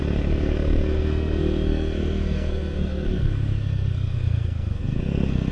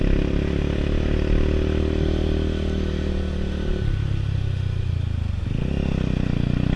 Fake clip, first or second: first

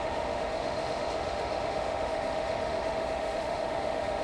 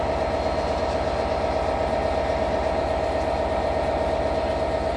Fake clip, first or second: first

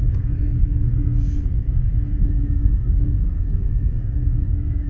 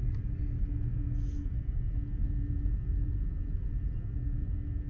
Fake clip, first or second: first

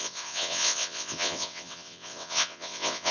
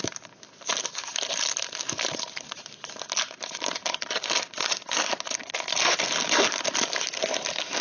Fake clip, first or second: first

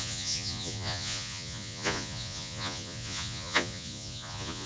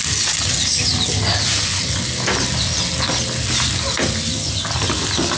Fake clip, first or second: first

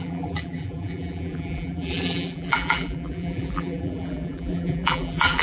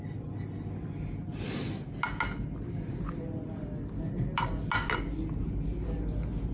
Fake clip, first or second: first